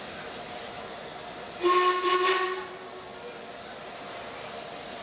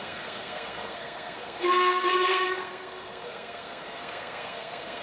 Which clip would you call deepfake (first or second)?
second